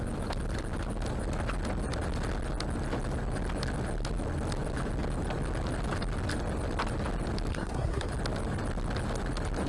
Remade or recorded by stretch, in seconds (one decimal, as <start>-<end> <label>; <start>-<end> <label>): 0.0-7.5 recorded; 7.5-8.1 remade; 8.1-9.7 recorded